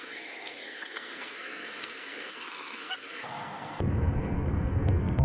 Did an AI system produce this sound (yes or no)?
yes